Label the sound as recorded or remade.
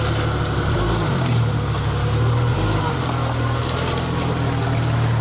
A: recorded